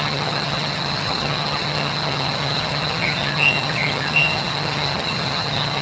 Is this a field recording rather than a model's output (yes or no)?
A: no